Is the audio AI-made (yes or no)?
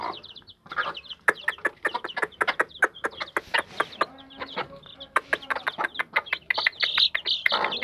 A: no